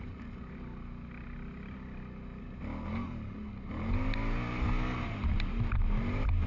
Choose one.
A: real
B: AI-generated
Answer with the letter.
A